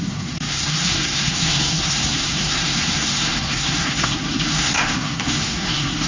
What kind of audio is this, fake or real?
fake